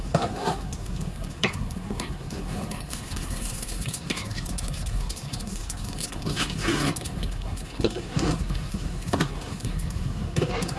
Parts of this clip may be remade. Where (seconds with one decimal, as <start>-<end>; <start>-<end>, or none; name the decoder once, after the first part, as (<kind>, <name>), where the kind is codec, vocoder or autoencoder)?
0.0-10.8 (codec, SNAC)

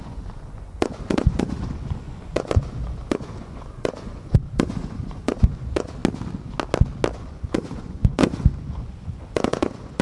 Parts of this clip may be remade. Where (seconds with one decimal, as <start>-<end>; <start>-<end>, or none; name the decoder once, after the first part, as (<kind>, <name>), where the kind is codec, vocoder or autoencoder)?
0.0-6.0 (vocoder, Vocos); 7.1-10.0

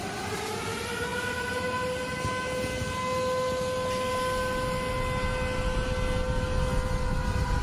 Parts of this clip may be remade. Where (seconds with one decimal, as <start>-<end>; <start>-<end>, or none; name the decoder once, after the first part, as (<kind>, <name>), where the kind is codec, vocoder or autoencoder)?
none

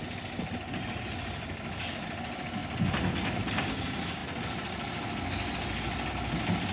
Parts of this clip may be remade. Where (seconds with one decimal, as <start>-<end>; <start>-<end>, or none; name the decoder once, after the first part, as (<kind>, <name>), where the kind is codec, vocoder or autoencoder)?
none

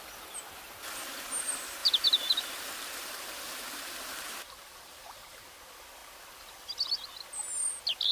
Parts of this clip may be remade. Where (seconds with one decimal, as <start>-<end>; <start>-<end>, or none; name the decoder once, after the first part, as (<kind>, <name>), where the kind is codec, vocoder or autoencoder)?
1.8-5.4 (vocoder, BigVGAN v2)